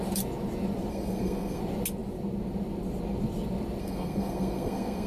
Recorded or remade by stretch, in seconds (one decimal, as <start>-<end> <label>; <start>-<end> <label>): 0.0-0.9 recorded; 0.9-1.6 remade; 1.6-3.8 recorded; 3.8-5.1 remade